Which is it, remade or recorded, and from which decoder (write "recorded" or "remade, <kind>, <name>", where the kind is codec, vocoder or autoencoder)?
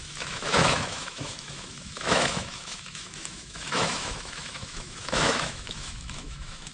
remade, autoencoder, DAC-VAE